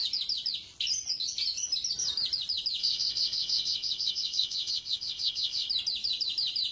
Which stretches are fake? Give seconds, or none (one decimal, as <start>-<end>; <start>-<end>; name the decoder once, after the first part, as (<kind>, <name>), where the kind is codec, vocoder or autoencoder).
2.8-5.7 (codec, ZipCodec)